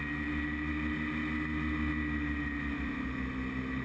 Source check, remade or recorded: recorded